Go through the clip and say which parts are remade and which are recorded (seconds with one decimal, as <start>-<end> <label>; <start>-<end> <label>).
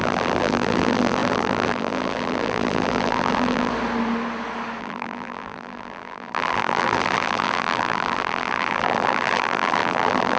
0.0-3.7 remade; 3.7-4.8 recorded; 4.8-10.4 remade